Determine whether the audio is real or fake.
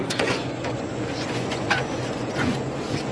fake